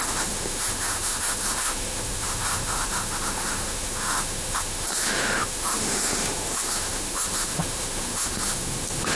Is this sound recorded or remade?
remade